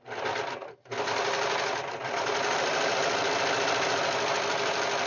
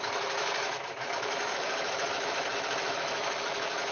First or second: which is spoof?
second